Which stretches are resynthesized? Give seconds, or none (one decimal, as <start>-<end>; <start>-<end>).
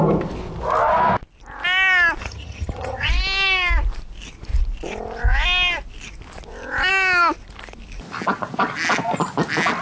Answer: 2.2-3.1